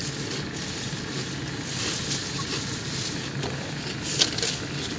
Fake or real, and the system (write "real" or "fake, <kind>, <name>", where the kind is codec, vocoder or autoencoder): real